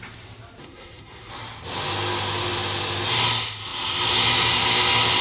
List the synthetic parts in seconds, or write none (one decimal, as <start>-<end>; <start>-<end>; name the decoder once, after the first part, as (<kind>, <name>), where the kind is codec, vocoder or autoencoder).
0.6-1.3 (codec, SNAC)